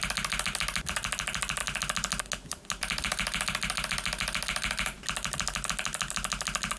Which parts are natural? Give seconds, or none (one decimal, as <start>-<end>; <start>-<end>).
0.0-6.8